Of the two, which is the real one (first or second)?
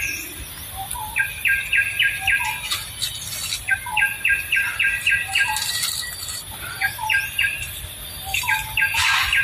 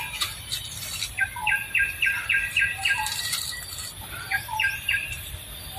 first